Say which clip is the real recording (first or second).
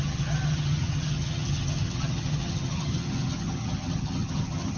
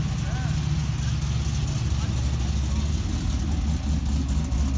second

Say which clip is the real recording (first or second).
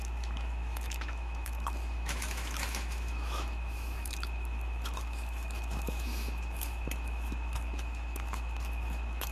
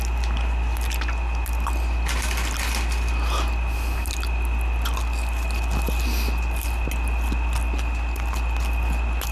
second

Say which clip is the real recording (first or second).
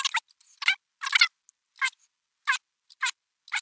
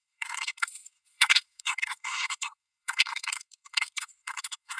first